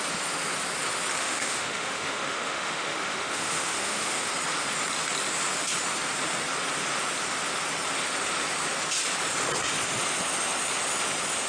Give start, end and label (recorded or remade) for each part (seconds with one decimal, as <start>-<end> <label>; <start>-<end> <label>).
0.0-1.2 recorded; 1.2-4.3 remade; 4.3-11.5 recorded